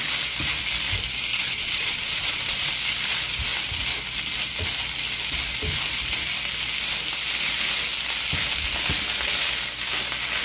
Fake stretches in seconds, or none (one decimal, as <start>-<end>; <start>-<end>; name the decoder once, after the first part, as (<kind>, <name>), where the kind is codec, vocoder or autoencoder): 1.3-2.7 (vocoder, Vocos)